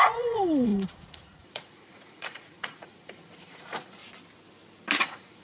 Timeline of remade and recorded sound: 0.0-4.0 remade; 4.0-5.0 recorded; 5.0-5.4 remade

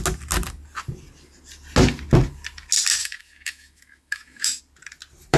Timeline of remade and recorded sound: 0.0-3.0 recorded; 3.0-4.6 remade; 4.6-5.4 recorded

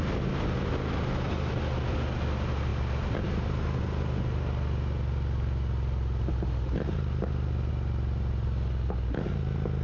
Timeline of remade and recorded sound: 0.0-9.8 recorded

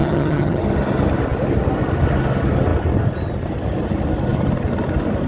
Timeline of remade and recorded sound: 0.0-0.6 remade; 0.6-5.3 recorded

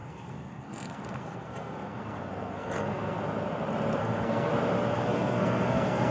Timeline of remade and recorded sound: 0.0-3.2 remade; 3.2-4.0 recorded; 4.0-4.5 remade; 4.5-4.9 recorded; 4.9-6.1 remade